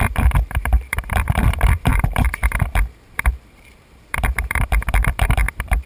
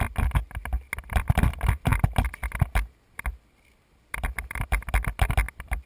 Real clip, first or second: second